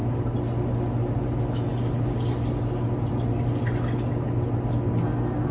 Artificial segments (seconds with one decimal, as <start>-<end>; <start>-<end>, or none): 1.7-3.1